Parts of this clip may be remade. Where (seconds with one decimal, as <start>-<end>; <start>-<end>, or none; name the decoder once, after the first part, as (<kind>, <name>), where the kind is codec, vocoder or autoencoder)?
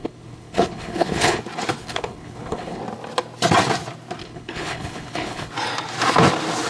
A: 0.0-1.4 (codec, HILCodec); 1.8-2.8; 4.2-5.5